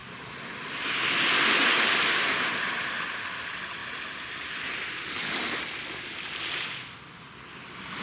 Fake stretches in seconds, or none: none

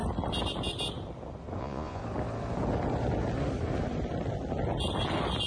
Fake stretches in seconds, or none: 1.6-2.0

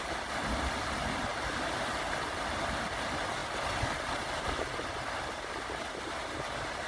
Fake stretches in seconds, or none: none

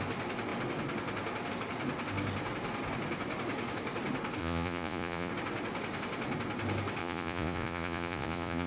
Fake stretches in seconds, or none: 4.4-5.3; 7.0-8.7